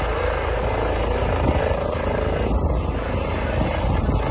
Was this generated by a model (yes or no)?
no